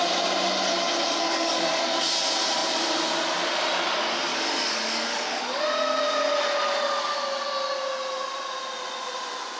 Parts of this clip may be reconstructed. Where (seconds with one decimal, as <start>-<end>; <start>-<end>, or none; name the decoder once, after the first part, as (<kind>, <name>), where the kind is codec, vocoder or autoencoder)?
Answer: 1.2-2.0 (codec, DAC); 4.3-5.6